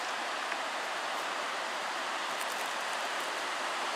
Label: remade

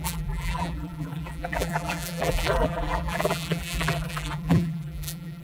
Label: remade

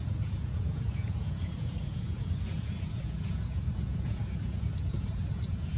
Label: remade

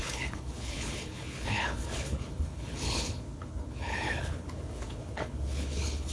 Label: remade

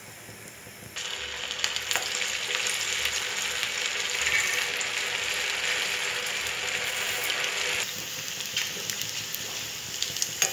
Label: recorded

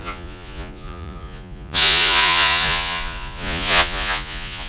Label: remade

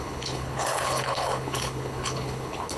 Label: remade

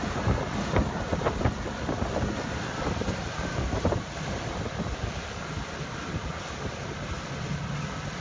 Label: remade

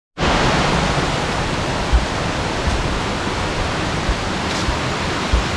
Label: recorded